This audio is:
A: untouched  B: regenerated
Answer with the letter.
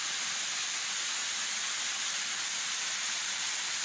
B